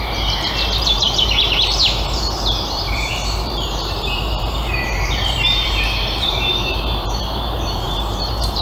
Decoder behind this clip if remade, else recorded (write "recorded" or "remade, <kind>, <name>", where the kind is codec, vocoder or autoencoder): remade, vocoder, BigVGAN v2